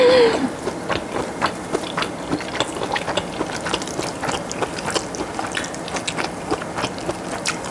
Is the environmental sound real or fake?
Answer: real